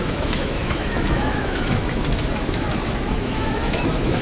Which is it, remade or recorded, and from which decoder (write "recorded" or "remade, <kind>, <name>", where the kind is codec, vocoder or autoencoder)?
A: remade, autoencoder, DAC-VAE